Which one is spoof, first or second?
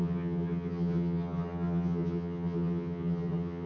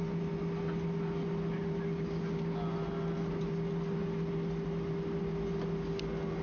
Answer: first